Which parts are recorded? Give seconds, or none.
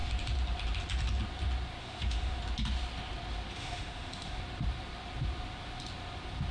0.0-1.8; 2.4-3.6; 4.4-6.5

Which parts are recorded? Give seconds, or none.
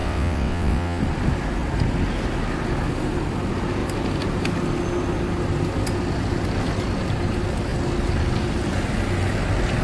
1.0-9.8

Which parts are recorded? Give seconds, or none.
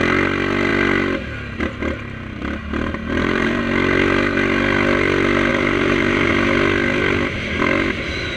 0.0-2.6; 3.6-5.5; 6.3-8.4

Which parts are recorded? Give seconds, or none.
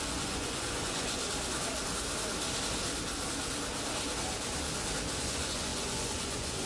1.2-5.2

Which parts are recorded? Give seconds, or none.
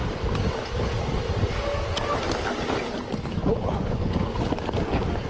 0.0-3.4; 4.3-5.3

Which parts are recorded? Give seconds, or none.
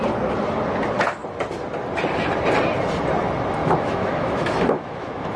0.0-3.6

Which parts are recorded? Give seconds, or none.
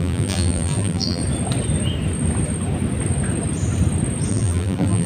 1.2-4.3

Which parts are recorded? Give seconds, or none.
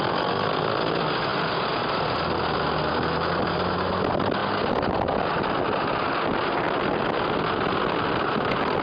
0.0-8.8